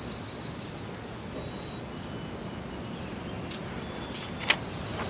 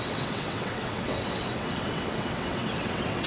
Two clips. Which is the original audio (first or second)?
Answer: first